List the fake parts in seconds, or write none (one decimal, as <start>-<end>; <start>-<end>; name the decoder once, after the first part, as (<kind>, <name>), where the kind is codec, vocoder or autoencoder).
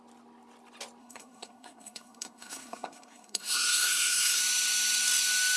1.0-4.4 (codec, SNAC)